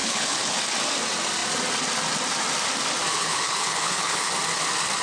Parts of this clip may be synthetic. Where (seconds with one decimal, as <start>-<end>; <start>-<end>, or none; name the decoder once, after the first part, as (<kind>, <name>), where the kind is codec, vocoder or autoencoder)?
0.0-0.6 (codec, HILCodec); 3.1-4.3